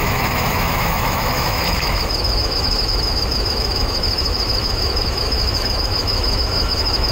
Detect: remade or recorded remade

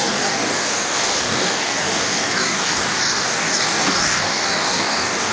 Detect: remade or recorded remade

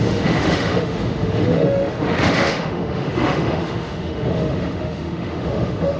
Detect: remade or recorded remade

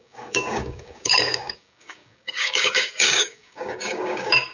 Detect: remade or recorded remade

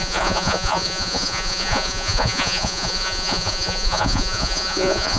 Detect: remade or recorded remade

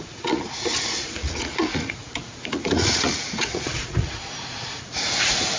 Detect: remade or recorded remade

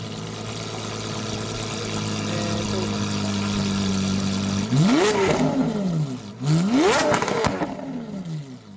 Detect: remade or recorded recorded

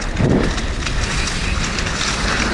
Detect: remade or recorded recorded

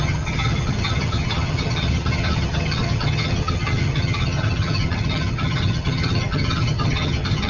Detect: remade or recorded remade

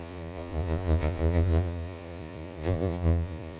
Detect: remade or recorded remade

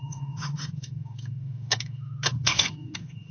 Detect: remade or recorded remade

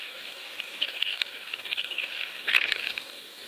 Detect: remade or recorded remade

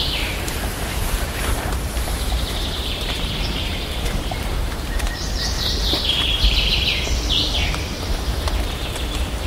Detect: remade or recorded remade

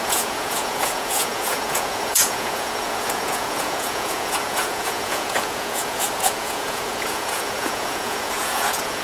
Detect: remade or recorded remade